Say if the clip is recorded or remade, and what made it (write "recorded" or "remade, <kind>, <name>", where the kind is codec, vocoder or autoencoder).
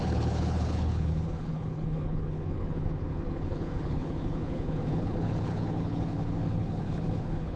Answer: remade, codec, HILCodec